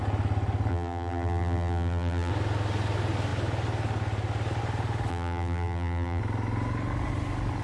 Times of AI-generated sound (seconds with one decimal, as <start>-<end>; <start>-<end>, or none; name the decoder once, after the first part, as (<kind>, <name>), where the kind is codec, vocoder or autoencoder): 0.7-2.3 (vocoder, BigVGAN v2); 5.1-6.2